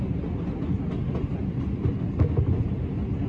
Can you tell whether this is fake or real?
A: real